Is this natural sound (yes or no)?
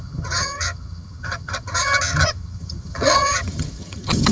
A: no